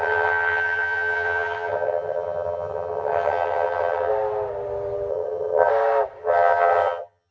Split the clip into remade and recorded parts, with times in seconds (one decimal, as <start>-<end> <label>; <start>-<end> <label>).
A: 0.0-4.1 remade; 4.1-5.1 recorded; 5.1-5.7 remade; 5.7-6.2 recorded; 6.2-7.3 remade